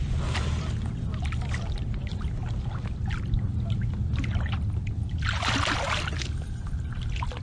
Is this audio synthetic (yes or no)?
no